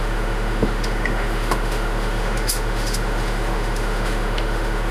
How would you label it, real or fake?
fake